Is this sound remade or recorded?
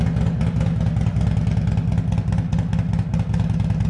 recorded